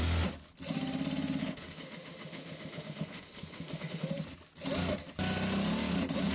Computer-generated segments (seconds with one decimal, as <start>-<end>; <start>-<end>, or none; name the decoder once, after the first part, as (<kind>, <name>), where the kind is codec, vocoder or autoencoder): 1.4-4.1 (autoencoder, DAC-VAE)